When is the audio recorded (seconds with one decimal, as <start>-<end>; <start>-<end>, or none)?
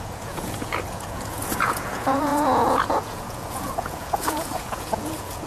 none